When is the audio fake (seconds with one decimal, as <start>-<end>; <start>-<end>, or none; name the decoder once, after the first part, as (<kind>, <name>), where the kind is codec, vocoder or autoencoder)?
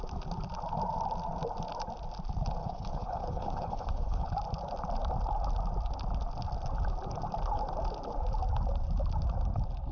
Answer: 2.6-4.3 (codec, HILCodec)